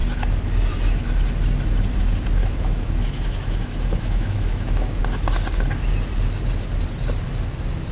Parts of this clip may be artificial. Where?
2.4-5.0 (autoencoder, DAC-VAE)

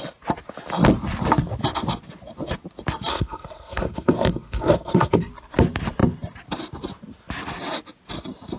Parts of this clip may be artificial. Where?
3.1-5.3 (codec, SNAC)

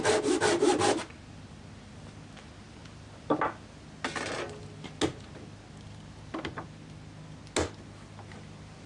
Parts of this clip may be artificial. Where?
none

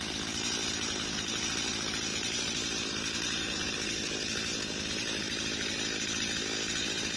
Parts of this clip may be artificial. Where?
none

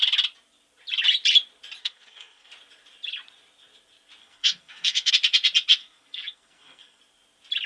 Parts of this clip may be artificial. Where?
1.8-2.5 (codec, SNAC); 4.2-5.1; 5.8-7.0